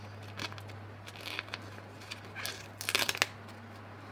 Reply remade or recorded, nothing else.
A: recorded